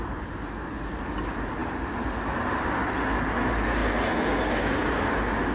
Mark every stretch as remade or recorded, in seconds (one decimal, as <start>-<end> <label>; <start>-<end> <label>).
0.0-5.5 recorded